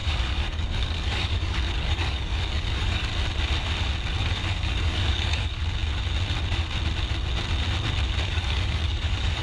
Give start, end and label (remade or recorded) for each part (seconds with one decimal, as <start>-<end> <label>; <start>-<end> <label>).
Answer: 0.0-3.1 remade; 3.1-4.3 recorded; 4.3-5.6 remade; 5.6-8.3 recorded; 8.3-9.4 remade